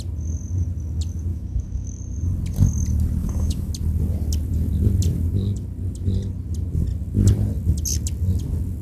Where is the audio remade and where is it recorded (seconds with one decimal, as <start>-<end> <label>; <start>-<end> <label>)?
0.0-1.3 recorded; 1.3-2.0 remade; 2.0-3.2 recorded; 3.2-3.7 remade; 3.7-8.8 recorded